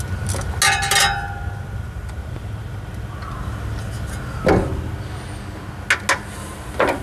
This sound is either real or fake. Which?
real